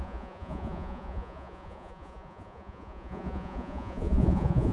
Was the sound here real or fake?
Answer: fake